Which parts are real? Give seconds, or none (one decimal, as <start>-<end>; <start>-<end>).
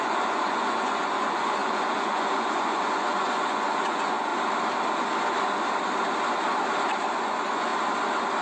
4.3-7.2; 7.7-8.4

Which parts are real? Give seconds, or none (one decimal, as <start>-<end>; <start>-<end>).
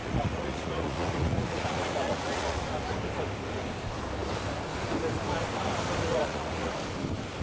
2.6-6.1; 6.7-7.4